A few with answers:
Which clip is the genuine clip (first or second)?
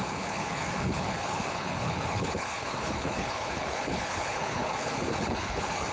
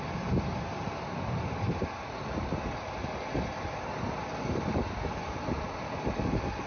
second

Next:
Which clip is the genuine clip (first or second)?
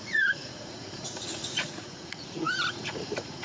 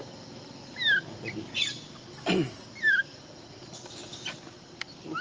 second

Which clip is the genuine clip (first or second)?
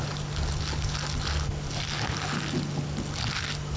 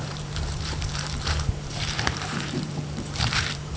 first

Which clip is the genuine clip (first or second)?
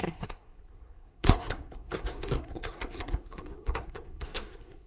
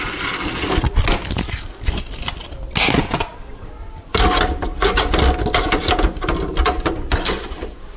second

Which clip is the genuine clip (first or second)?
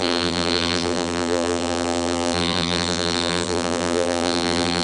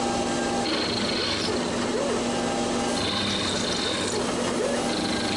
second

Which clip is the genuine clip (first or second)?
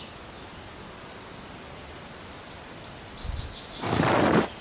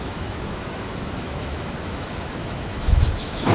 first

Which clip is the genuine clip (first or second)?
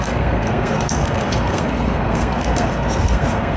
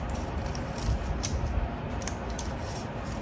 second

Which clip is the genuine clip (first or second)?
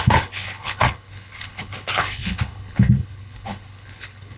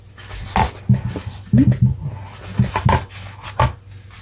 second